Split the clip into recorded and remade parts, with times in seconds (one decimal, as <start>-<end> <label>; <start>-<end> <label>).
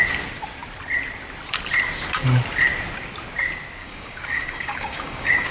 0.0-3.8 recorded; 3.8-5.5 remade